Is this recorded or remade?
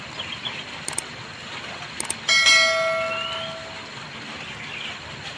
recorded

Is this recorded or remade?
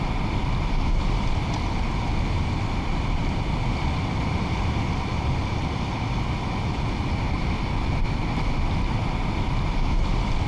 recorded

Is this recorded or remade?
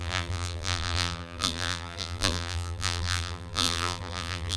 remade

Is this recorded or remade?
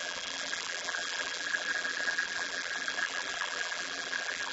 remade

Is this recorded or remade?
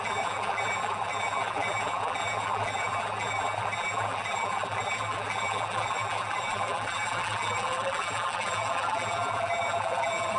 remade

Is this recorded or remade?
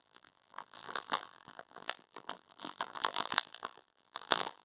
remade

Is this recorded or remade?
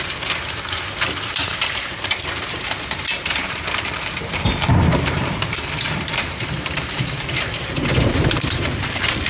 remade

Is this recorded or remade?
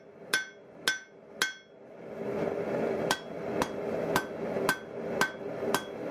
recorded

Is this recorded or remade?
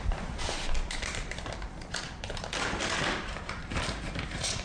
remade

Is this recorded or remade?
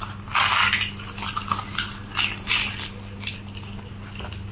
recorded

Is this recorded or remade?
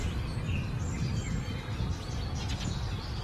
recorded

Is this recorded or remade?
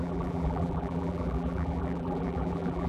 remade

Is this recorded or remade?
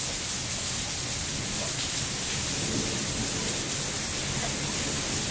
recorded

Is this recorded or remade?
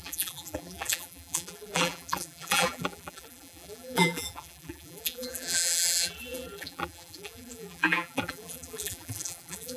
remade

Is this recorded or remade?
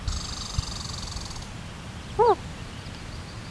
recorded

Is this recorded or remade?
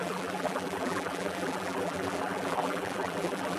remade